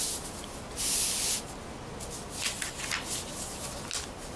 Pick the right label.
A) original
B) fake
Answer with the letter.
A